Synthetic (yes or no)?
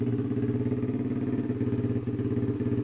no